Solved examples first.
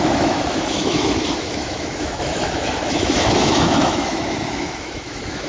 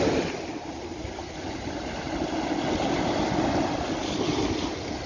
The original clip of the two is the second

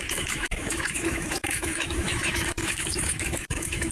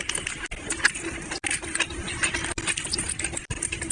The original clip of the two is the second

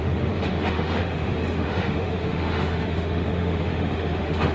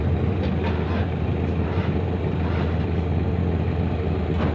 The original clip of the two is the second